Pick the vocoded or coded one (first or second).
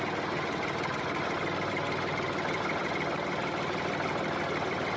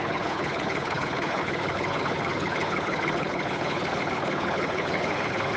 second